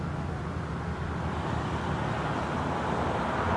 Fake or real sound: real